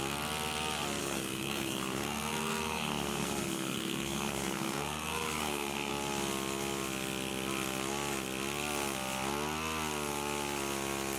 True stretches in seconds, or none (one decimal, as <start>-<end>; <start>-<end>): 0.0-1.0; 5.9-11.2